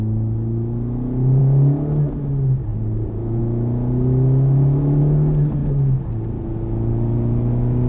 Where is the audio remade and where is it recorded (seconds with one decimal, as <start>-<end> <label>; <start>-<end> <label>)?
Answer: 0.0-2.7 recorded; 2.7-3.4 remade; 3.4-7.9 recorded

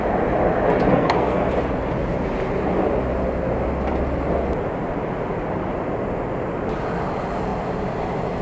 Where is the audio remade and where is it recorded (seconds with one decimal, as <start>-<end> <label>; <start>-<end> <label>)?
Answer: 0.0-0.9 recorded; 0.9-1.5 remade; 1.5-8.4 recorded

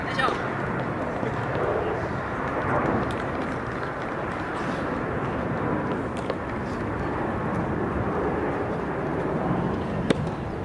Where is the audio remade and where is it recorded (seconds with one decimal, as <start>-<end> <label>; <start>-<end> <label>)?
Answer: 0.0-2.8 recorded; 2.8-3.4 remade; 3.4-9.1 recorded; 9.1-10.2 remade; 10.2-10.6 recorded

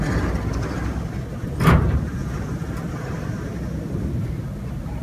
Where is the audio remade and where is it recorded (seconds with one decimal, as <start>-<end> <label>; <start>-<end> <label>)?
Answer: 0.0-2.6 recorded; 2.6-4.3 remade; 4.3-5.0 recorded

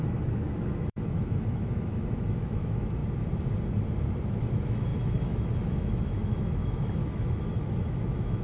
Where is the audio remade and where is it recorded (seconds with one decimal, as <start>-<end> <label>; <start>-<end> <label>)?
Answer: 0.0-3.0 remade; 3.0-4.3 recorded; 4.3-8.4 remade

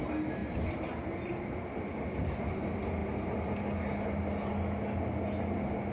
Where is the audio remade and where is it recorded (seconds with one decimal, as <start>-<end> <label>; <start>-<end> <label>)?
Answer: 0.0-0.4 recorded; 0.4-1.4 remade; 1.4-3.0 recorded; 3.0-3.5 remade; 3.5-5.9 recorded